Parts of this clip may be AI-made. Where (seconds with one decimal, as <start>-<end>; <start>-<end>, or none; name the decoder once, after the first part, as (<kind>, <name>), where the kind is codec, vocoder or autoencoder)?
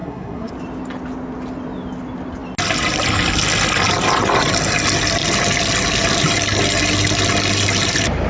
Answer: 0.0-0.5 (codec, SNAC)